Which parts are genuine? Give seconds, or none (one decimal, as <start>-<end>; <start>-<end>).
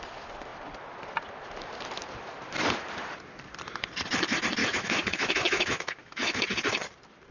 0.0-4.6; 6.4-7.3